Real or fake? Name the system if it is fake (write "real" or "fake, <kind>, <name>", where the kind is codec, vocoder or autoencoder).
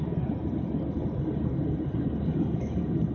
real